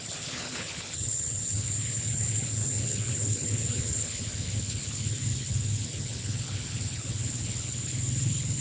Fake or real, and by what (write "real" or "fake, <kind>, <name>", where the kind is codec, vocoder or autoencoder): fake, codec, HILCodec